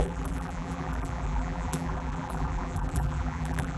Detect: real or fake fake